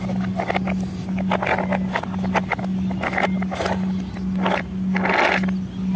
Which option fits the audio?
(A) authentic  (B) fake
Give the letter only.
A